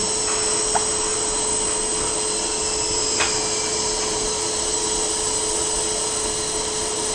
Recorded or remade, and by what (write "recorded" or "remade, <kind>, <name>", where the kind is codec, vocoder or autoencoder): recorded